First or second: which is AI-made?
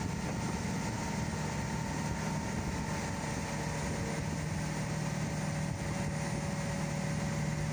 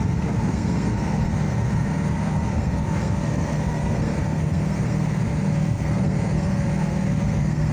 second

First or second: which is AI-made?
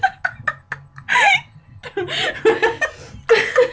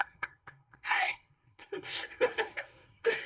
second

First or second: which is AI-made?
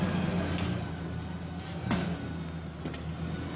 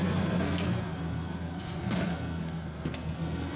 second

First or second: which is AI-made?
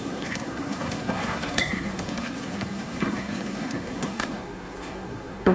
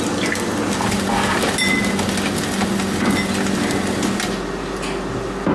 first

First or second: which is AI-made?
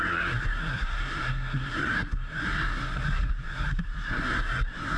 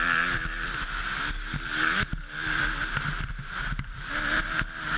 first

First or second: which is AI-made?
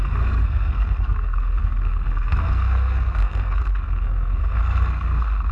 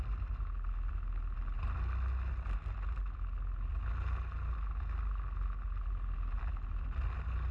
first